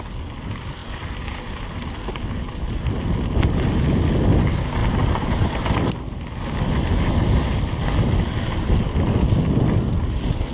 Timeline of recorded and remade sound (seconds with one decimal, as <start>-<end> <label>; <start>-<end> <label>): 0.0-10.5 recorded